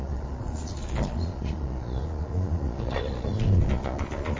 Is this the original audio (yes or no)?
no